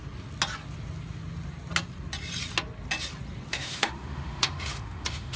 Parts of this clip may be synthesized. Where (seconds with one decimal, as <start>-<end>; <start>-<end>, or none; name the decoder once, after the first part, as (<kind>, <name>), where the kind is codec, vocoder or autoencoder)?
3.5-5.4 (autoencoder, DAC-VAE)